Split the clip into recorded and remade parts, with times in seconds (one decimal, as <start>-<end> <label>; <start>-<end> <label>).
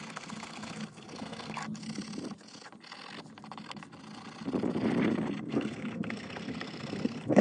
0.0-1.6 remade; 1.6-5.5 recorded; 5.5-7.4 remade